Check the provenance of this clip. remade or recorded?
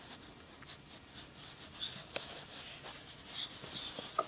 recorded